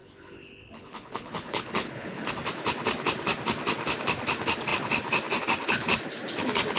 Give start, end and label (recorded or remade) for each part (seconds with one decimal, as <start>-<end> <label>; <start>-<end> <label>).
0.0-2.3 remade; 2.3-6.8 recorded

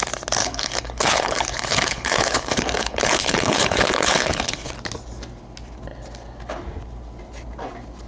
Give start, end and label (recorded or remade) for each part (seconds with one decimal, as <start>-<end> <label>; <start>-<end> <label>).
0.0-0.4 recorded; 0.4-4.7 remade; 4.7-8.1 recorded

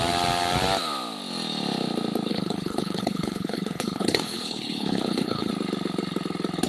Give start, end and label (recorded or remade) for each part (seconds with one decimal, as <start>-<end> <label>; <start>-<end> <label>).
0.0-2.3 recorded; 2.3-5.5 remade; 5.5-6.7 recorded

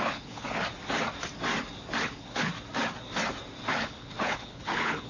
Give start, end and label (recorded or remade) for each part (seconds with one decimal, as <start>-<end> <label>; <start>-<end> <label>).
0.0-0.6 remade; 0.6-2.0 recorded; 2.0-2.5 remade; 2.5-3.7 recorded; 3.7-5.1 remade

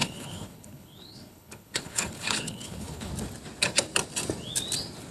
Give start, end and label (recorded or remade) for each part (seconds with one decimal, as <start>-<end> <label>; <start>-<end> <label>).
0.0-3.1 remade; 3.1-5.1 recorded

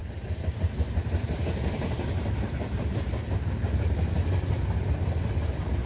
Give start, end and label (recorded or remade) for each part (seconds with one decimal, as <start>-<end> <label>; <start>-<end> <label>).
0.0-5.9 recorded

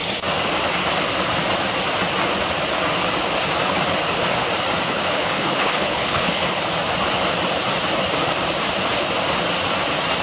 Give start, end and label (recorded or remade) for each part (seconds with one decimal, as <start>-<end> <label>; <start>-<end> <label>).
0.0-4.9 recorded; 4.9-6.7 remade; 6.7-10.2 recorded

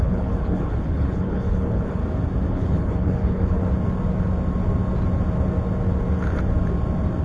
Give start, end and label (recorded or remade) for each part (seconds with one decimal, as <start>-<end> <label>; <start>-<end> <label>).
0.0-2.0 remade; 2.0-2.5 recorded; 2.5-3.6 remade; 3.6-7.2 recorded